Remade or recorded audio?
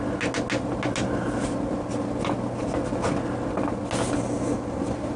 recorded